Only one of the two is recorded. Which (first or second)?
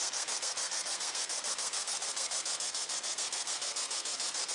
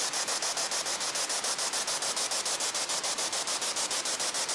second